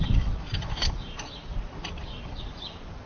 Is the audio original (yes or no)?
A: yes